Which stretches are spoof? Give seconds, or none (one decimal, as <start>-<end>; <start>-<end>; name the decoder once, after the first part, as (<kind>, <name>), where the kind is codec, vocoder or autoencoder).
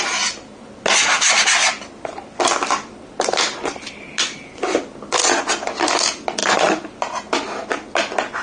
none